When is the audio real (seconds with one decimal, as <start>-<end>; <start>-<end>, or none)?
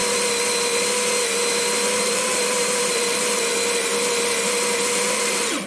0.0-2.0; 3.5-5.1